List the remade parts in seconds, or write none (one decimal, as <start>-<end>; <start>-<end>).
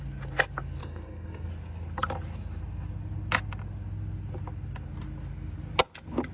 0.8-1.5